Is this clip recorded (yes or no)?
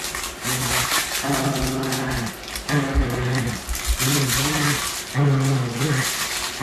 yes